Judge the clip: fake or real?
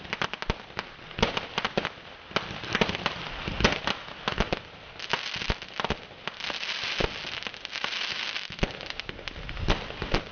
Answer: real